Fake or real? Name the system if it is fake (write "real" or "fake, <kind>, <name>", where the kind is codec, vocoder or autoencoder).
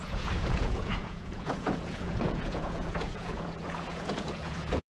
fake, vocoder, Vocos